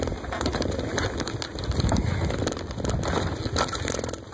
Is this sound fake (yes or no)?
no